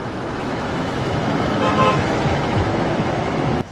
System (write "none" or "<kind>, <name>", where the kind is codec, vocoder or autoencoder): autoencoder, DAC-VAE